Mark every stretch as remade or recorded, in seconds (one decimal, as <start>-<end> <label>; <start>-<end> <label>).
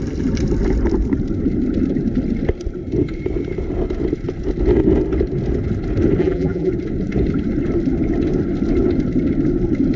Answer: 0.0-6.2 recorded; 6.2-6.7 remade; 6.7-10.0 recorded